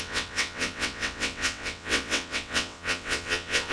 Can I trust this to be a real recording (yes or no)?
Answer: no